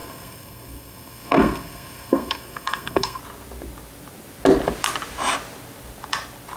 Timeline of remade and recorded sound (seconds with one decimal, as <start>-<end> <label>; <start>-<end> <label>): 0.0-3.2 remade; 3.2-6.6 recorded